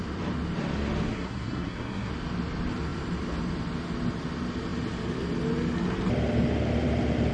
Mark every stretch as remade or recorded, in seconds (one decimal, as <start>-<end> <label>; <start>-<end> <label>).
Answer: 0.0-1.1 recorded; 1.1-2.1 remade; 2.1-7.3 recorded